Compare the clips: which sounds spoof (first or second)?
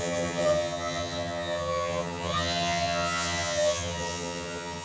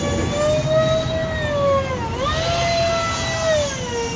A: first